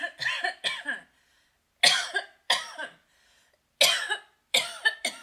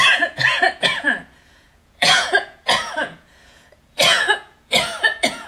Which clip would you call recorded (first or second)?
first